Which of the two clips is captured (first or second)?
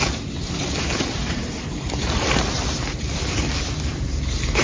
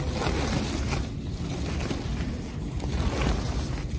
second